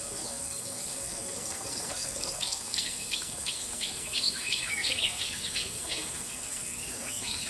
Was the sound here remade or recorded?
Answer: remade